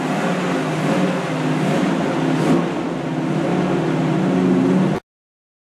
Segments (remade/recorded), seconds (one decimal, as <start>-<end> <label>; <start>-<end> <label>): 0.0-5.8 recorded